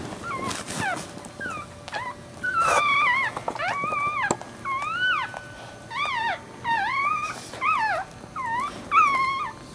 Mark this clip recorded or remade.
recorded